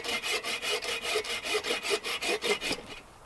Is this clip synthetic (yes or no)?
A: no